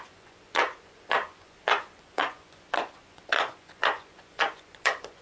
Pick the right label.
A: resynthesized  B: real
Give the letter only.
A